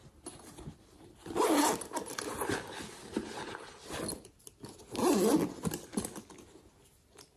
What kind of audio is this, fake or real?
real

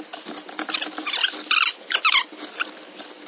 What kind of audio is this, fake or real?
real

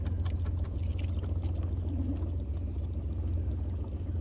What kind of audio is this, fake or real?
real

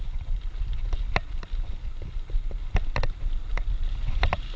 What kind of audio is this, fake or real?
real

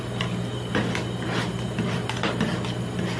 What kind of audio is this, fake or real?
real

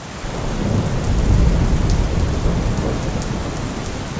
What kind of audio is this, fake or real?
real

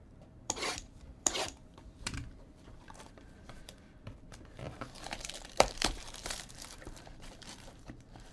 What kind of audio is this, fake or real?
fake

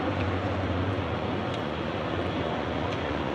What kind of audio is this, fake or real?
fake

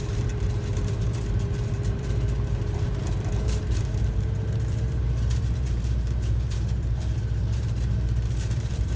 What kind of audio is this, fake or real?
fake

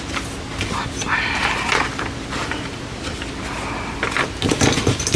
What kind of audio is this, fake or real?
real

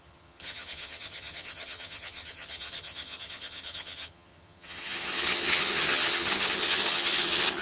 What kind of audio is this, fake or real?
fake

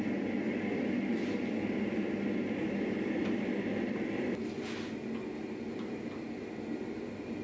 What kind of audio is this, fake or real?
real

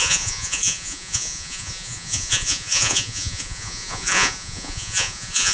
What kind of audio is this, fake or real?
fake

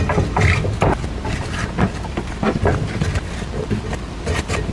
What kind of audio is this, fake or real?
real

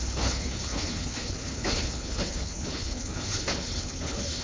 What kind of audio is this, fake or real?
fake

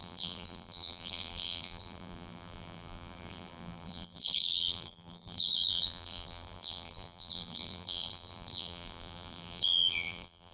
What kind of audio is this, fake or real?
fake